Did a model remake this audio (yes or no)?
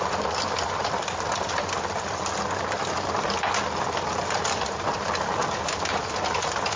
no